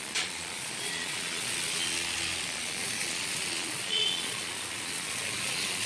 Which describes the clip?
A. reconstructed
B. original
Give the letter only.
A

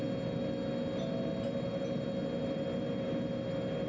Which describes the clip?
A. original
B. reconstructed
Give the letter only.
A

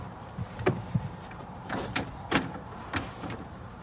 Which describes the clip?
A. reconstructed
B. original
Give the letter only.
A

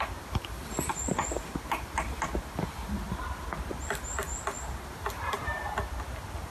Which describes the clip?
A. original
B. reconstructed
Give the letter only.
A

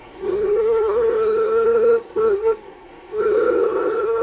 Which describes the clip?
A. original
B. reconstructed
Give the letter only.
B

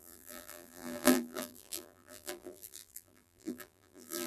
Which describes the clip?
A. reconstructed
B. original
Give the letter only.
A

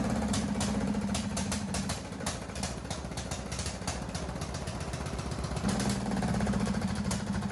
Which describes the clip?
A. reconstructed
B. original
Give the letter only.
A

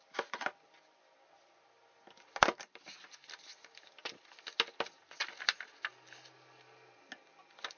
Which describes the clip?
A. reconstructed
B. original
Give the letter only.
B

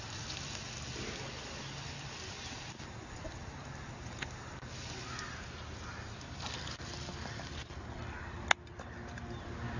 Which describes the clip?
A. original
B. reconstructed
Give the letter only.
A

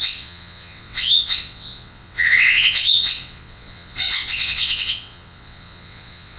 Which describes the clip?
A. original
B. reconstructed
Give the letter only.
B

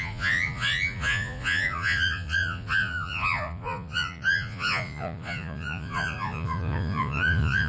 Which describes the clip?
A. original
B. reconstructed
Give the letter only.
B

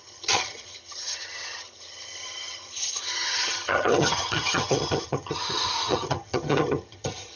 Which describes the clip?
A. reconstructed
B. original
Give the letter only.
A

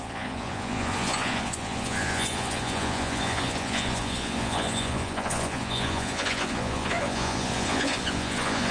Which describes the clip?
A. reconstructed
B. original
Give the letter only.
A